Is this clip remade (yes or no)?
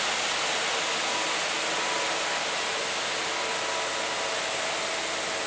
no